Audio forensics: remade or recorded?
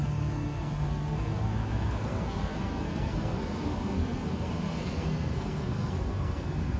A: remade